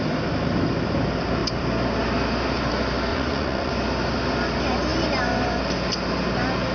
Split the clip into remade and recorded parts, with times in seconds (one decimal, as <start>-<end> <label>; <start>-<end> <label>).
0.0-3.1 recorded; 3.1-3.7 remade; 3.7-6.7 recorded